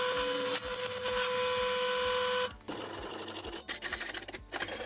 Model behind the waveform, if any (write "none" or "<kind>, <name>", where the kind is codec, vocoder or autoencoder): none